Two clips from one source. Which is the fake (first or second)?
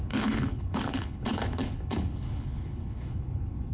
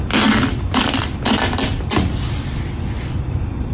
first